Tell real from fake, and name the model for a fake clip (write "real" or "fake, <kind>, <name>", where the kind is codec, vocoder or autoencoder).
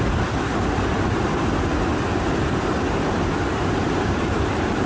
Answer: real